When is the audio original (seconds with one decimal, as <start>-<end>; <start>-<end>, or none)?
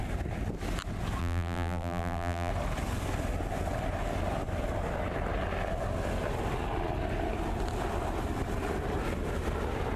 0.0-1.2; 2.5-10.0